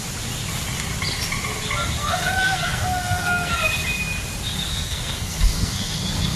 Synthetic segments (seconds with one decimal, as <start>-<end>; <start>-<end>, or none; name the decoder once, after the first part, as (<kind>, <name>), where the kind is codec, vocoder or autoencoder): 2.0-3.6 (codec, SNAC); 4.7-6.4